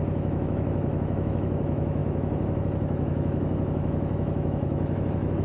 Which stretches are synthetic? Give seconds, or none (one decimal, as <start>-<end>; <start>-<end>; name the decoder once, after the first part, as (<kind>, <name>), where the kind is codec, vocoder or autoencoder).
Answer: 0.0-5.4 (autoencoder, DAC-VAE)